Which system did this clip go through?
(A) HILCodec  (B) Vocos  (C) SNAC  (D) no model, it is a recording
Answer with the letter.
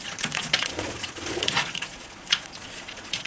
B